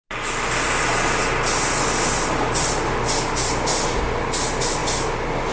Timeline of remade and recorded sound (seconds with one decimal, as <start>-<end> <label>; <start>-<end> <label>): 0.0-5.5 recorded